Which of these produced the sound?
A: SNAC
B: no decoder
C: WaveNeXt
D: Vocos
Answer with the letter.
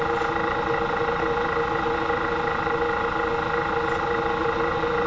B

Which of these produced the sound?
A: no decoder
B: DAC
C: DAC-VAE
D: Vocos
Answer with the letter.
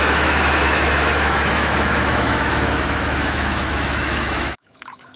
C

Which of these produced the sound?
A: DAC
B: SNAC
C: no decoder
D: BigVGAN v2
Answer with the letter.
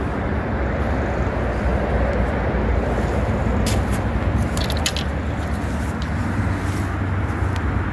C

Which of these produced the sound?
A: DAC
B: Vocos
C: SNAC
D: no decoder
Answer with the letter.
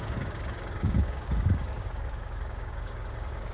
A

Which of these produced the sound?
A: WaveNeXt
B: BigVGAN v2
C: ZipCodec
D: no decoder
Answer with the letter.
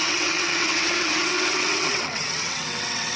A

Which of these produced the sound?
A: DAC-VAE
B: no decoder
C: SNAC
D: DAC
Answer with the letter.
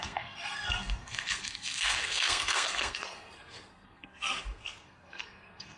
C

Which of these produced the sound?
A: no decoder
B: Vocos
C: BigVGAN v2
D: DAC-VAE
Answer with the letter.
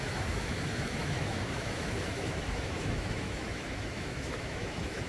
D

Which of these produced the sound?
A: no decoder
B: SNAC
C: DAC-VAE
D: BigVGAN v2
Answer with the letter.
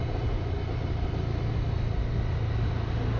A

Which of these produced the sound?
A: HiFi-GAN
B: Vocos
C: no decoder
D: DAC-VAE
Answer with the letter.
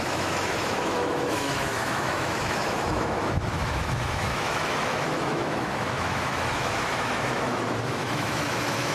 D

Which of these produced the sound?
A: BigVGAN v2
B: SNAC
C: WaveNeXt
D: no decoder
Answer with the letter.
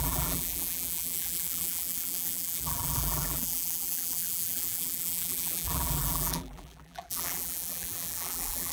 A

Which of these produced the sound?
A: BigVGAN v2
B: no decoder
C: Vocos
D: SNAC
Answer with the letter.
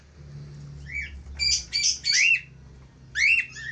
B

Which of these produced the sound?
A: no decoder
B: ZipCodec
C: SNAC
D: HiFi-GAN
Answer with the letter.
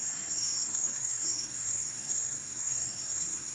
C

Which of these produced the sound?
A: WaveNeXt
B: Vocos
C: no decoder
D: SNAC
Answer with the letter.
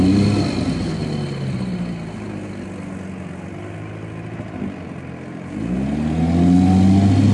C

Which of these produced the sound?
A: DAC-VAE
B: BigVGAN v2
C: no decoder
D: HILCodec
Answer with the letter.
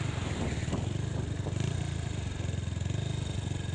C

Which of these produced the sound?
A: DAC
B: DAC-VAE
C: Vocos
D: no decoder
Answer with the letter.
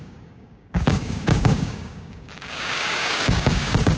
A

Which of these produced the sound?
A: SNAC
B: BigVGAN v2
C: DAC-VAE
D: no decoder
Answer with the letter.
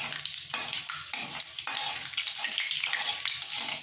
D